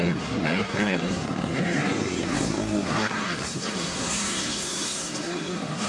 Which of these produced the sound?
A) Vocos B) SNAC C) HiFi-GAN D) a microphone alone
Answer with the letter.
B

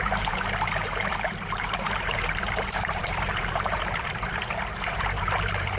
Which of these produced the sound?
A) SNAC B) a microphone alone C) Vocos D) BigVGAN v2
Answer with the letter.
D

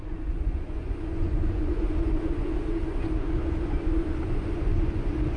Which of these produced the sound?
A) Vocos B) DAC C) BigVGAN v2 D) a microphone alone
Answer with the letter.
A